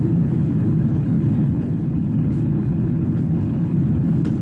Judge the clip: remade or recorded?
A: remade